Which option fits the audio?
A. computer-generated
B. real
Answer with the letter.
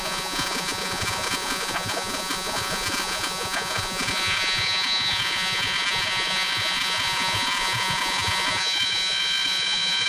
A